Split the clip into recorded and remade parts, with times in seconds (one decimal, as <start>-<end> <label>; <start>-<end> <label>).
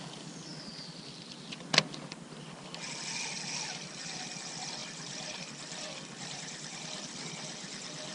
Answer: 0.0-0.5 recorded; 0.5-2.7 remade; 2.7-4.8 recorded; 4.8-7.3 remade; 7.3-8.1 recorded